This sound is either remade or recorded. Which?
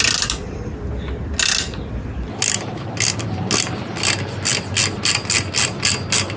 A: recorded